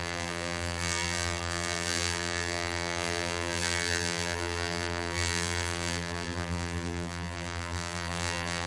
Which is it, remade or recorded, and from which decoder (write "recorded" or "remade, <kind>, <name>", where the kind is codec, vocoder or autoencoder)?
remade, vocoder, BigVGAN v2